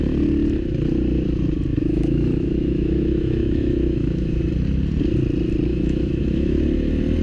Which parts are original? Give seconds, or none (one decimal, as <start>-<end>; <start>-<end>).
0.0-1.7; 4.4-5.7; 6.6-7.2